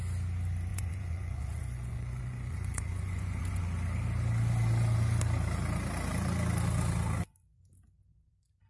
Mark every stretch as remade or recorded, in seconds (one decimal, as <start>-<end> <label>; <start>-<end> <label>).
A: 0.0-0.7 recorded; 0.7-3.6 remade; 3.6-8.7 recorded